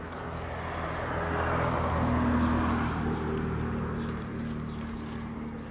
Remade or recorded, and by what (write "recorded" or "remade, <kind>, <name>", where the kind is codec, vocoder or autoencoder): recorded